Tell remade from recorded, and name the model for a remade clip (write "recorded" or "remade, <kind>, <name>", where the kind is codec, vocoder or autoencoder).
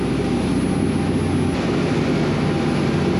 recorded